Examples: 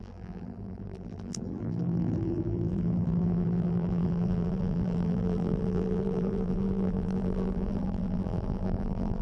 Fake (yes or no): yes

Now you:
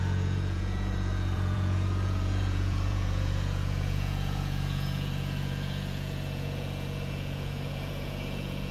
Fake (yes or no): yes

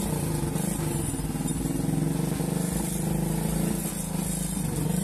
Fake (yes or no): no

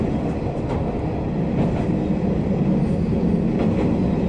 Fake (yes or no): no